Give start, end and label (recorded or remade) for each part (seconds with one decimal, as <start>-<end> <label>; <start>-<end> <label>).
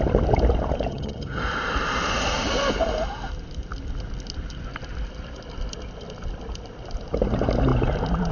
0.0-0.9 recorded; 0.9-1.4 remade; 1.4-8.3 recorded